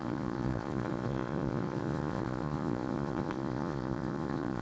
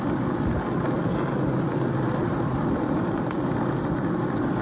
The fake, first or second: first